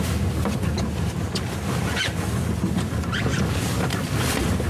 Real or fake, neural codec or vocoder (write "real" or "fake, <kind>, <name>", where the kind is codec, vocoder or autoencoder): real